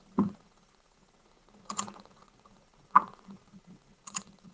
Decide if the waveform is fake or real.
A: fake